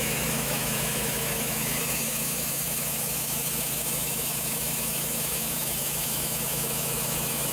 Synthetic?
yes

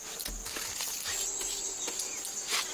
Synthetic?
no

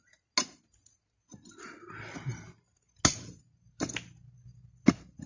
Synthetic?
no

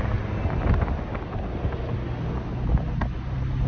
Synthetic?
no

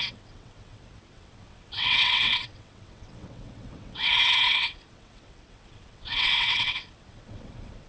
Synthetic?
yes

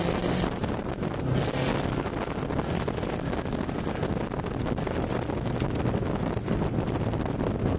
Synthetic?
no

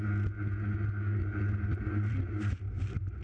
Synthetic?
no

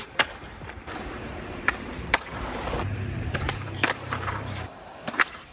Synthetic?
yes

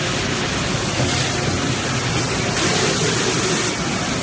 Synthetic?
no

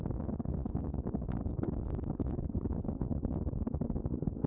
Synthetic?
yes